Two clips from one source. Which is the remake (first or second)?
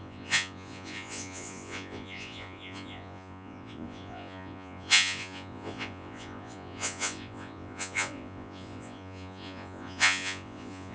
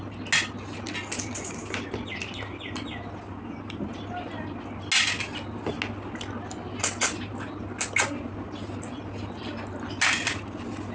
first